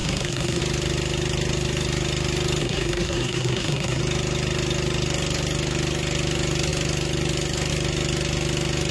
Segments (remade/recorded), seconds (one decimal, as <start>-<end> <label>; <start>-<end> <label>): 0.0-0.6 remade; 0.6-2.6 recorded; 2.6-4.0 remade; 4.0-8.9 recorded